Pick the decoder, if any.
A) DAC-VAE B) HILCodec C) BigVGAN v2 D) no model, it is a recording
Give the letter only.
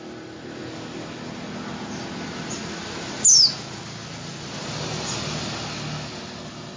D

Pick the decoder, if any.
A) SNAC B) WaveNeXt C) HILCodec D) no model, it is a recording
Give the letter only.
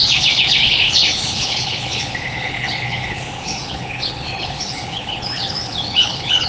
C